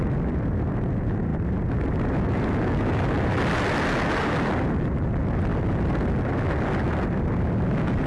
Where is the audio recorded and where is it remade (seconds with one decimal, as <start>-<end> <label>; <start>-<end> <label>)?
0.0-8.1 recorded